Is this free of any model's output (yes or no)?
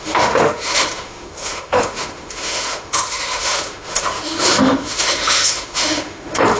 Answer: no